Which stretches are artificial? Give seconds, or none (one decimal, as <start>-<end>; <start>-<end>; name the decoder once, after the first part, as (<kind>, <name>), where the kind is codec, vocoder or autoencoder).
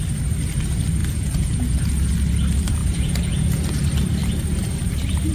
1.0-1.8 (vocoder, Vocos); 2.8-3.8